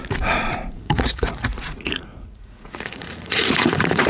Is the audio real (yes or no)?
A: no